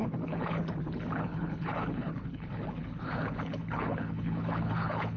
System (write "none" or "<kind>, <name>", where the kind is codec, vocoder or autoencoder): codec, HILCodec